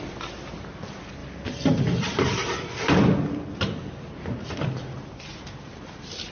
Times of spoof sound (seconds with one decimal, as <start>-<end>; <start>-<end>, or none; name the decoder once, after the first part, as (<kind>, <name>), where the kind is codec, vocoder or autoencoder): 1.2-2.8 (vocoder, BigVGAN v2)